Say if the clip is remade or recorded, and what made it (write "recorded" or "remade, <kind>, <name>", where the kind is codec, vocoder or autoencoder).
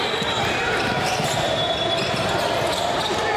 recorded